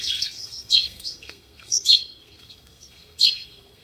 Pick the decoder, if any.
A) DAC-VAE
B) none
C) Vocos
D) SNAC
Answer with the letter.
D